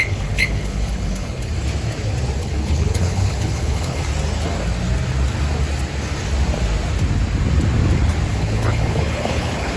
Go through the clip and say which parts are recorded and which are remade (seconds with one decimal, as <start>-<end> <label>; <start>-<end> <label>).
0.0-1.5 remade; 1.5-2.4 recorded; 2.4-4.0 remade; 4.0-8.3 recorded; 8.3-9.8 remade